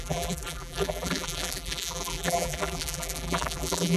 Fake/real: fake